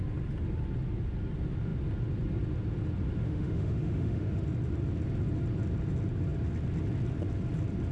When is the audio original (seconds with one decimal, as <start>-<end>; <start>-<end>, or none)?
0.0-3.2; 4.4-7.9